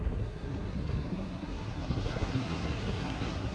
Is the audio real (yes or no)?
no